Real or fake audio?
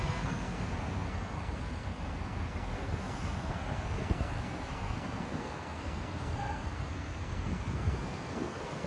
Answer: fake